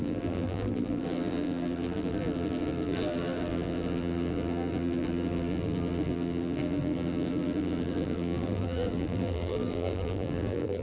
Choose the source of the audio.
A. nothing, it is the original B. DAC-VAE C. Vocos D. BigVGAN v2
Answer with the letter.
D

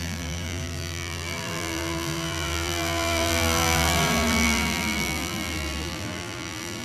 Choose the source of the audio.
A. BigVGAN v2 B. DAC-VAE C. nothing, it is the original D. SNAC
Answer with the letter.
A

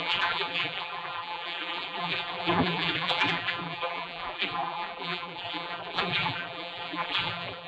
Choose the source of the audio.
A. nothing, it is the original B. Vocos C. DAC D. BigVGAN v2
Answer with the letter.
D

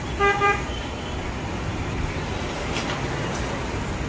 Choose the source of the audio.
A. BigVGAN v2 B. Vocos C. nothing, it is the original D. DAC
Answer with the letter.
A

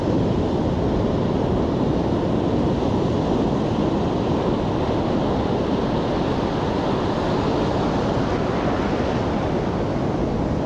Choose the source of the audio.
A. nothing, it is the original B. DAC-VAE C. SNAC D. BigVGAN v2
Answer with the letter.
A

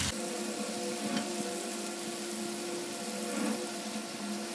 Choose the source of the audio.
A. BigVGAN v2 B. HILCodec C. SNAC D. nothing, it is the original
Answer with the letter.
D